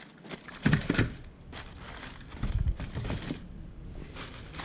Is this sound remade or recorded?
recorded